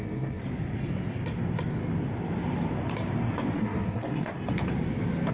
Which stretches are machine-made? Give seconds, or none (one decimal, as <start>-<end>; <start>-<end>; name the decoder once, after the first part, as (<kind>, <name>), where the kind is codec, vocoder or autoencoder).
0.0-0.4 (codec, SNAC); 3.6-4.3